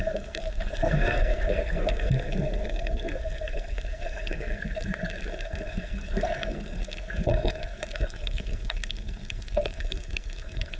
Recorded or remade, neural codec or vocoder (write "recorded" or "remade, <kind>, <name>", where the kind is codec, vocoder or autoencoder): remade, codec, SNAC